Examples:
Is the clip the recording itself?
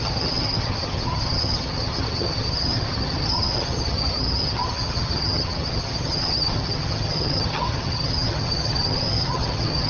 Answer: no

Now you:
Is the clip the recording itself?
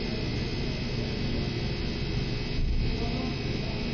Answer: yes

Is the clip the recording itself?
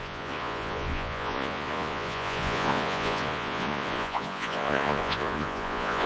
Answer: no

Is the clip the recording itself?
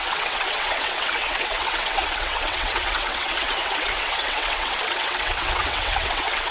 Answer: no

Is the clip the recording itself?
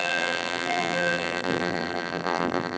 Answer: no